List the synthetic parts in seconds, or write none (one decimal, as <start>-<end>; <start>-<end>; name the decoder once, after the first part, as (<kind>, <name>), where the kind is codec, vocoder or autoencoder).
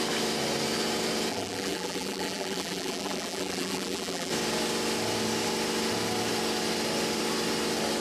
1.3-4.3 (vocoder, BigVGAN v2)